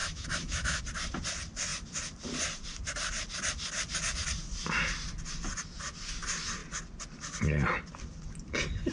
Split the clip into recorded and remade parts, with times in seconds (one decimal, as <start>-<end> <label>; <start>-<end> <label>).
0.0-0.8 remade; 0.8-8.9 recorded